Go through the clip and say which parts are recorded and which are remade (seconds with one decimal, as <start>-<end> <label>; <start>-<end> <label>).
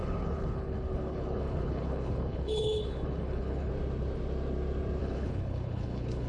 0.0-3.7 remade; 3.7-5.0 recorded; 5.0-6.3 remade